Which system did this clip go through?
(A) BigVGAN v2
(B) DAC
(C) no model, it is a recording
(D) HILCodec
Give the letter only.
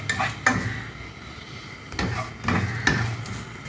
C